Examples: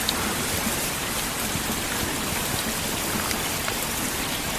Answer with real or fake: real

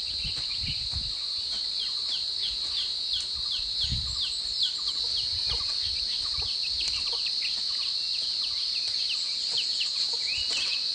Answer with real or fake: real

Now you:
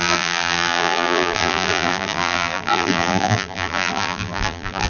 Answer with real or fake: fake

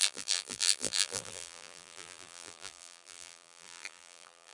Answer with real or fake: fake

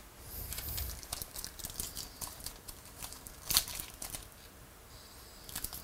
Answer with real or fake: fake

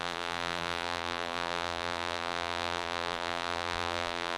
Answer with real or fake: fake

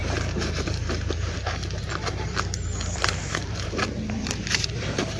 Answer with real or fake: fake